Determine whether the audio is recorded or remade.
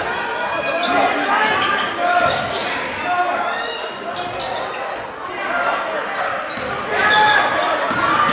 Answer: recorded